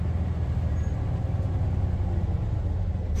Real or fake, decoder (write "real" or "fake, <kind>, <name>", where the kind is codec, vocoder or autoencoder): real